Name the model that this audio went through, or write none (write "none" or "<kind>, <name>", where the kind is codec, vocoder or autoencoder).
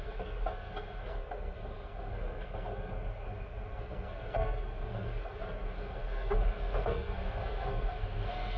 codec, SNAC